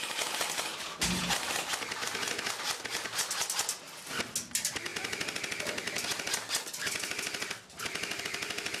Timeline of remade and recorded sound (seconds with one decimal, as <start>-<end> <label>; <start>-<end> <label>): 0.0-8.8 recorded